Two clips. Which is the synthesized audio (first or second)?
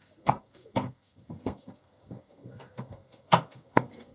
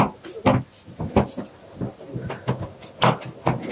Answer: first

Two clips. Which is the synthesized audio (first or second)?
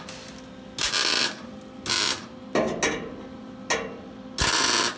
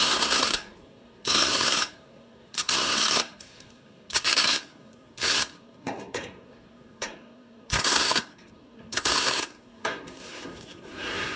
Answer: second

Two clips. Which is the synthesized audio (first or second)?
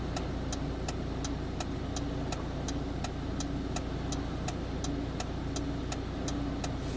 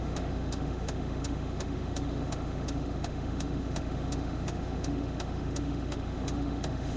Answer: second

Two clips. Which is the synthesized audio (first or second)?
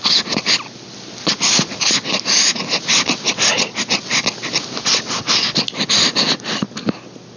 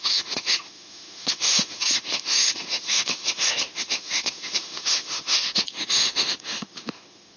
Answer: second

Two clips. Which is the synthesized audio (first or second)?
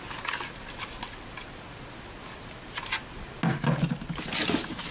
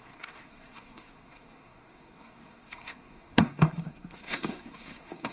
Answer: second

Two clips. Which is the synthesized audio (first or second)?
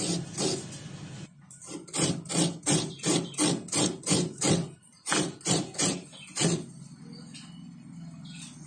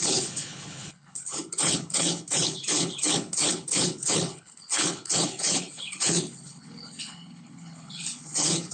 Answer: second